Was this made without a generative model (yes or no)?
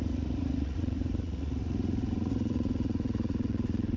no